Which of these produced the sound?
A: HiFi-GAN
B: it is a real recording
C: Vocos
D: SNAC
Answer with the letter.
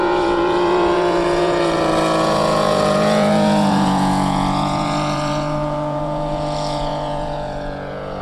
C